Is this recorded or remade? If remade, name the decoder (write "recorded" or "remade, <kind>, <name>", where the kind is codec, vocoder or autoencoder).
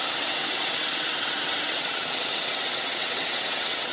remade, vocoder, WaveNeXt